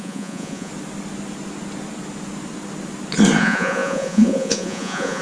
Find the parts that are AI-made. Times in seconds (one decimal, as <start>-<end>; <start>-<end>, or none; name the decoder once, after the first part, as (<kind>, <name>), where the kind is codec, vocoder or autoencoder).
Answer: 0.0-0.7 (vocoder, Vocos); 3.4-5.2